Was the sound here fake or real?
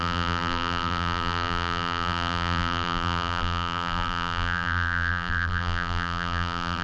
fake